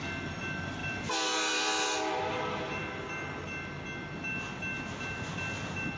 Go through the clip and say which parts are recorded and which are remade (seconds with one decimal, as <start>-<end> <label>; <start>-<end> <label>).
0.0-6.0 recorded